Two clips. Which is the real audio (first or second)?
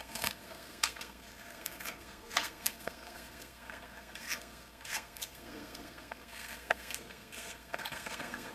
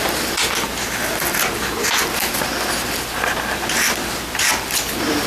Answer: second